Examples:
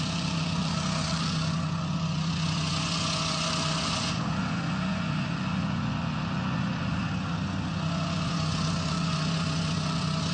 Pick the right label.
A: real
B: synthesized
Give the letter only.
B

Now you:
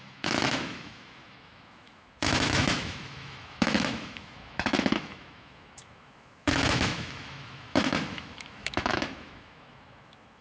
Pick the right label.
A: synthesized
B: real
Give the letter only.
A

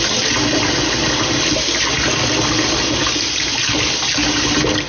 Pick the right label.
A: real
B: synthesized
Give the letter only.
A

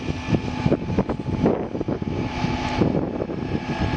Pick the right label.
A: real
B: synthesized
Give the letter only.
A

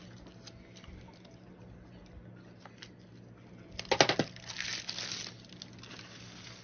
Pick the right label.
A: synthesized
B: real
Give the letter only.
B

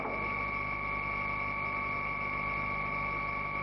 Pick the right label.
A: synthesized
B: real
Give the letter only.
B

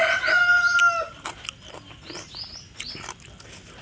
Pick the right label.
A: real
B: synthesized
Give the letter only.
A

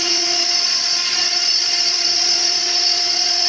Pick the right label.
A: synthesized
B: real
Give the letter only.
A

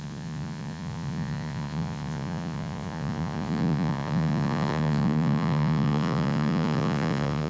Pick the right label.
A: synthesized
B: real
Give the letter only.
A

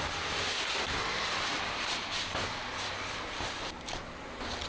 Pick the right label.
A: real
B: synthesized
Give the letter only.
A